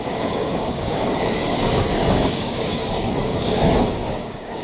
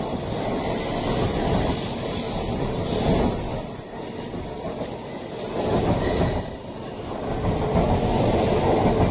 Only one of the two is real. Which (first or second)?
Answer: second